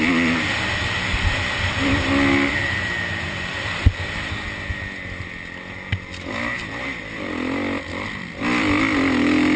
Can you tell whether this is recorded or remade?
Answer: recorded